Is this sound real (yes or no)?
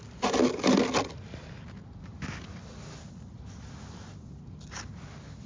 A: yes